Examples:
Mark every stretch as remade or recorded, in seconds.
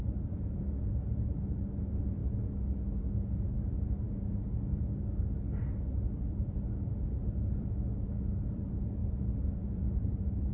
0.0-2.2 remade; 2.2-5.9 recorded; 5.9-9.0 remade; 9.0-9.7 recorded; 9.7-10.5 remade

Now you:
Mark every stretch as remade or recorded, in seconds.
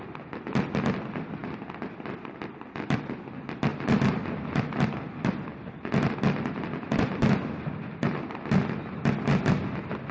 0.0-3.7 recorded; 3.7-4.2 remade; 4.2-10.1 recorded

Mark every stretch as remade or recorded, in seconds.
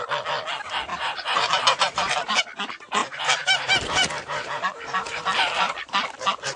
0.0-0.9 recorded; 0.9-2.4 remade; 2.4-3.0 recorded; 3.0-6.6 remade